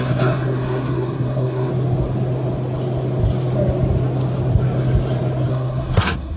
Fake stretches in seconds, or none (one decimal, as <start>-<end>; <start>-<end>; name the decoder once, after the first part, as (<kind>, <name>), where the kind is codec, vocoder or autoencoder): 0.0-1.7 (codec, SNAC); 5.5-6.4